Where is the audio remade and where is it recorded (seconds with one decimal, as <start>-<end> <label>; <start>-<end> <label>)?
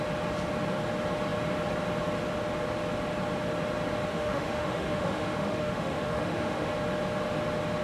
0.0-4.1 recorded; 4.1-6.7 remade; 6.7-7.8 recorded